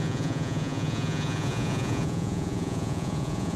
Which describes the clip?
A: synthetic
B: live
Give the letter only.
A